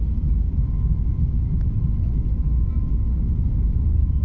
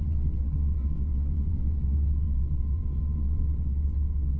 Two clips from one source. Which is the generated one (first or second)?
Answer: second